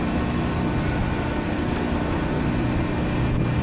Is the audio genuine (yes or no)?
yes